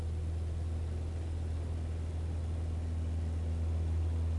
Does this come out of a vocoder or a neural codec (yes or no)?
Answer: no